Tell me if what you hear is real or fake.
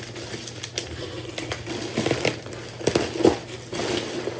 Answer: real